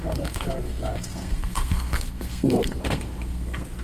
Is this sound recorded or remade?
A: remade